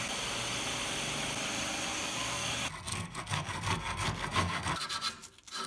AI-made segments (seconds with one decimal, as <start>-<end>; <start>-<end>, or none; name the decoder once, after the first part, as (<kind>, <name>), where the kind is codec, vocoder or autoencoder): 1.9-2.5 (codec, SNAC); 2.9-4.8